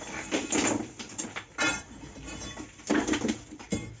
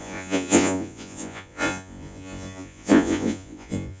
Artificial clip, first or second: second